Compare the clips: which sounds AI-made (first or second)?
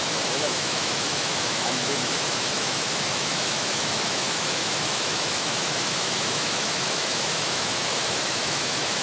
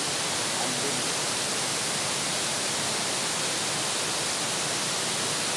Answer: first